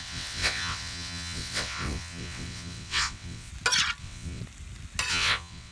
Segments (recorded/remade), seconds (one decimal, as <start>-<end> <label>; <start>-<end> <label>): 0.0-3.5 remade; 3.5-4.0 recorded; 4.0-4.4 remade; 4.4-5.1 recorded; 5.1-5.7 remade